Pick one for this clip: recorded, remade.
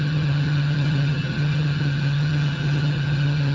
remade